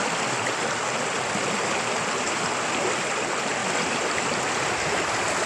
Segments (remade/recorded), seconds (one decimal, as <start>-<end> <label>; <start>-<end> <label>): 0.0-5.5 recorded